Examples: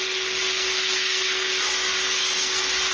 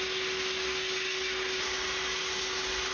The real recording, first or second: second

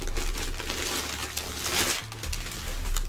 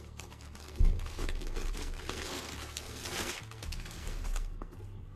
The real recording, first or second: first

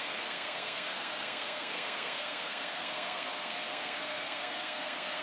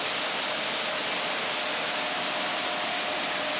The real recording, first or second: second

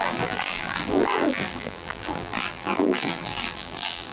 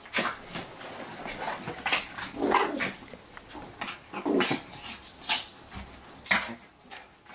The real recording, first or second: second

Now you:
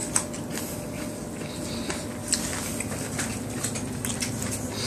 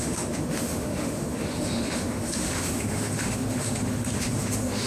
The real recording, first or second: first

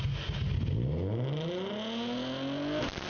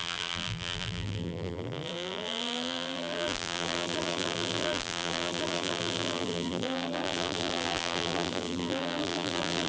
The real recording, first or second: first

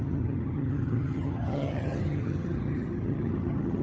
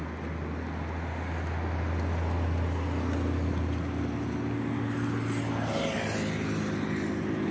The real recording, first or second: second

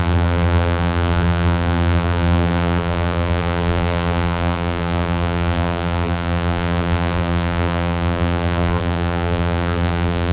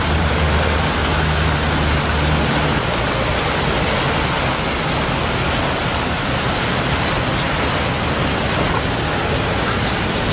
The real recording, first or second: second